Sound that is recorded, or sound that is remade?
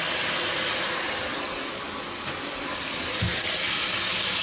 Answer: recorded